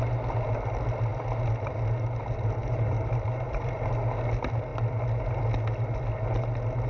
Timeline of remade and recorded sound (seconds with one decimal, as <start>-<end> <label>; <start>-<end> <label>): 0.0-2.6 recorded; 2.6-3.9 remade; 3.9-6.9 recorded